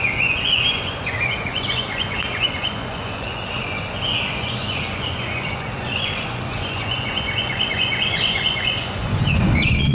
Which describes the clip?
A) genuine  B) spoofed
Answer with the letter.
B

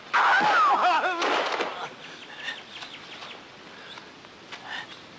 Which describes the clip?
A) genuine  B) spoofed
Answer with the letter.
A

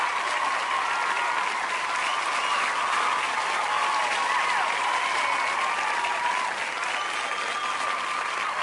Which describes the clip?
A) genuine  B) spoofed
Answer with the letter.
A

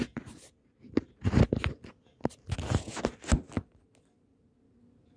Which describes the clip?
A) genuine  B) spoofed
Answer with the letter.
A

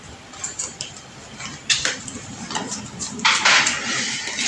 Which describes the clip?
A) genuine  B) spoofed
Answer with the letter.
A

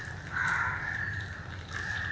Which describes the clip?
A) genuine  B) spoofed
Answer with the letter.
A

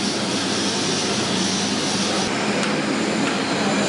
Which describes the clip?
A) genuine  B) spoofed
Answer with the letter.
A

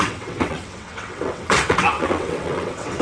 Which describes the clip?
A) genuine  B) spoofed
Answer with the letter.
B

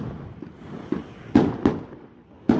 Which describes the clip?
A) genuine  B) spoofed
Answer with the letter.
A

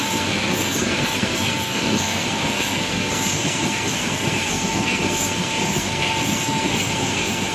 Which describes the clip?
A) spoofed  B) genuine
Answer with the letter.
A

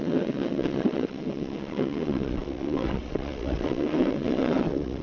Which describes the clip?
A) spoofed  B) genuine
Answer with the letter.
A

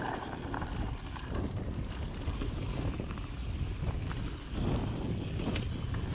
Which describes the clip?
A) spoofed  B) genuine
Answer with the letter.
B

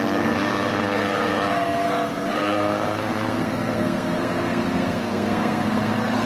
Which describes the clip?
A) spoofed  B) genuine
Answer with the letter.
A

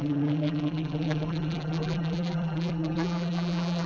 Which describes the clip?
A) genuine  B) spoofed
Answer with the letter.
B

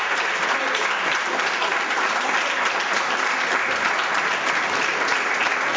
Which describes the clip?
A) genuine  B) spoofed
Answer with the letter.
A